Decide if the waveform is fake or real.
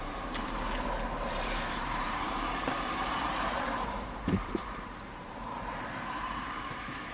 fake